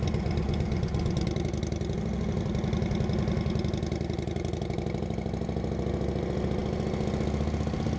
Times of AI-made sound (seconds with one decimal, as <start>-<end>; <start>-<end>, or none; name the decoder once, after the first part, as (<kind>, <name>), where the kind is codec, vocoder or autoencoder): none